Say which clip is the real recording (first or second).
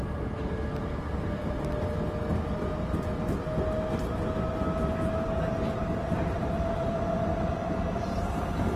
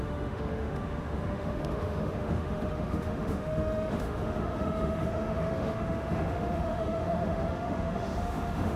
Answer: first